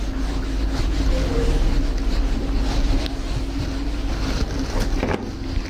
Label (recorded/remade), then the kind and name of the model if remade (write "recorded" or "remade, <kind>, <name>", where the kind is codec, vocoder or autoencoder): recorded